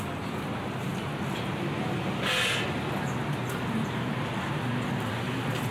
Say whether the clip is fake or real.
real